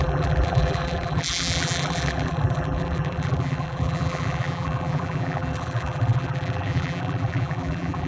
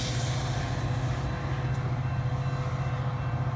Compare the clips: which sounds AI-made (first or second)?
first